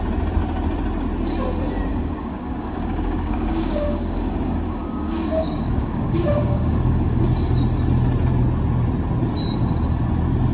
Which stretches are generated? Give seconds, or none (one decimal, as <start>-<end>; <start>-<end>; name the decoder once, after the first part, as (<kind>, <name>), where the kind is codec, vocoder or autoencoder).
1.9-7.2 (codec, DAC)